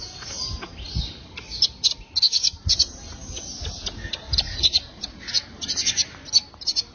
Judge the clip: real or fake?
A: real